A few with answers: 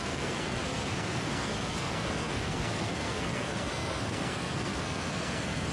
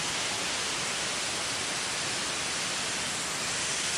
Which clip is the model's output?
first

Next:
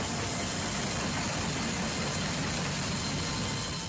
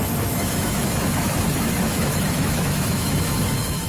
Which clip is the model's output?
second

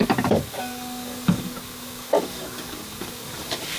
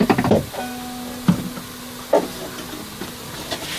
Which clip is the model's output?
first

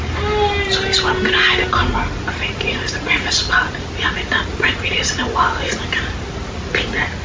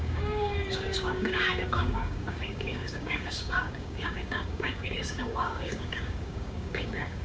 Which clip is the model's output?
second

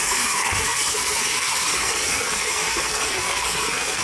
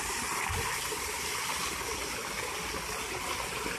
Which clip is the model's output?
first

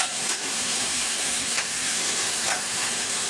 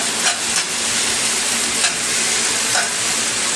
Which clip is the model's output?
first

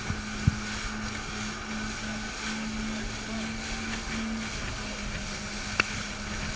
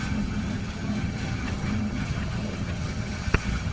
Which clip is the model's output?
second